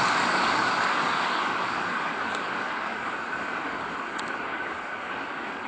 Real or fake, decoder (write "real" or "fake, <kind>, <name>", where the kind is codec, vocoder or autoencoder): fake, codec, DAC